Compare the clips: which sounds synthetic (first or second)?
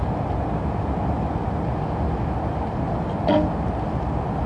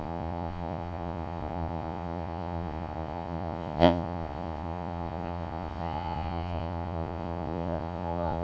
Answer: second